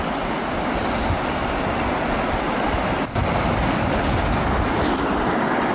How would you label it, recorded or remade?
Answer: recorded